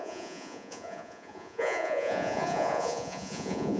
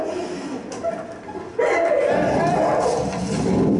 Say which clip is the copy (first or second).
first